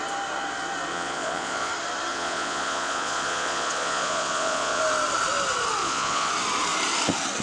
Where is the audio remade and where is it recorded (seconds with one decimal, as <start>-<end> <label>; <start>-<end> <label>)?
0.0-0.9 recorded; 0.9-1.7 remade; 1.7-2.1 recorded; 2.1-4.8 remade; 4.8-5.8 recorded; 5.8-6.3 remade; 6.3-7.4 recorded